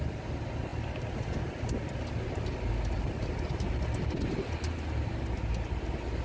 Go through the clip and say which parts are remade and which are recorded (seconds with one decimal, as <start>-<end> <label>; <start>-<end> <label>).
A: 0.0-6.2 recorded